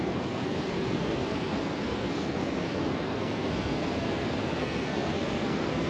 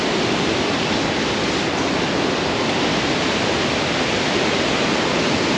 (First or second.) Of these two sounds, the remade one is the first